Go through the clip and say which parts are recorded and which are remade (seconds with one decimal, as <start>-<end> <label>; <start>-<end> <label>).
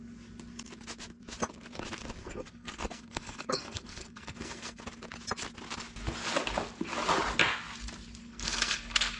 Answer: 0.0-2.2 recorded; 2.2-4.8 remade; 4.8-8.2 recorded; 8.2-9.2 remade